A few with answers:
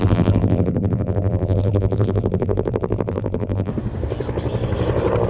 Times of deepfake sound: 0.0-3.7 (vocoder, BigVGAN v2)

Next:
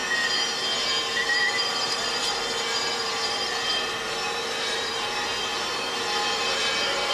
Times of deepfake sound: 1.6-7.1 (vocoder, BigVGAN v2)